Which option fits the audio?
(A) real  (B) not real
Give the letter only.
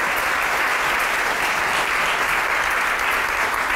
A